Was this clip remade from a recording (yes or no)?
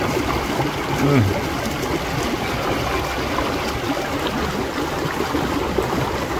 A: no